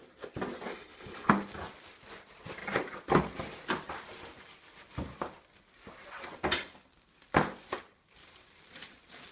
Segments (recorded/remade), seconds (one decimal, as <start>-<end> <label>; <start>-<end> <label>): 0.0-0.7 recorded; 0.7-1.3 remade; 1.3-9.3 recorded